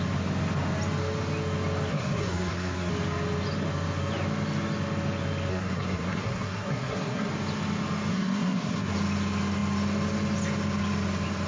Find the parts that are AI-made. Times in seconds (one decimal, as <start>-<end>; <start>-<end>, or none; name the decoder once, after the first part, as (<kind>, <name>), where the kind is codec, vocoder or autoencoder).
1.9-2.9 (codec, SNAC); 5.5-7.3; 8.1-8.9